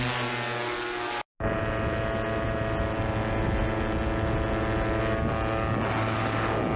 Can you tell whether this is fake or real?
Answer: real